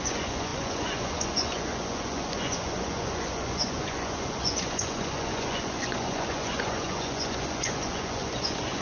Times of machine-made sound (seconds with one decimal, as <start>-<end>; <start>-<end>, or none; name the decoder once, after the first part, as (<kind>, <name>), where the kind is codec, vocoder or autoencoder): 0.0-8.8 (vocoder, Vocos)